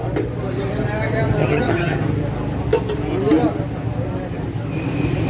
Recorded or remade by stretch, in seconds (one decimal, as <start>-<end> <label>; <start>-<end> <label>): 0.0-1.4 recorded; 1.4-2.0 remade; 2.0-5.3 recorded